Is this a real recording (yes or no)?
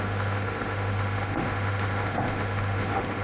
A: no